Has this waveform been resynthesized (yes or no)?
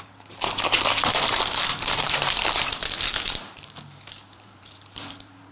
yes